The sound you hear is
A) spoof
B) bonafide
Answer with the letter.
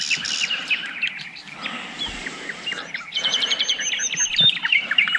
B